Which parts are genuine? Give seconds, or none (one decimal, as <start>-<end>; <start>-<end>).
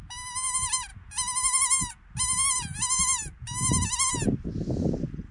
0.0-5.3